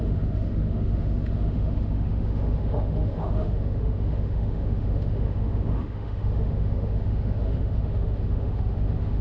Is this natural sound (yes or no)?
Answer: no